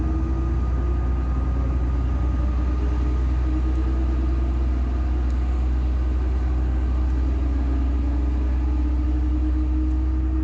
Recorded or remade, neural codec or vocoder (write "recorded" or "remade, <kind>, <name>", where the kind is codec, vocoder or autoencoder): recorded